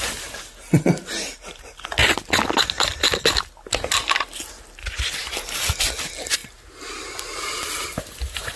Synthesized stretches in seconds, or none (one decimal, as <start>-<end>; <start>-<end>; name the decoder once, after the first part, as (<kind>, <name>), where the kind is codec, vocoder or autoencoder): none